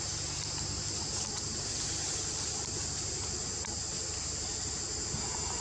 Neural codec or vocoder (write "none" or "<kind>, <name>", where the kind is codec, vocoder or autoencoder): none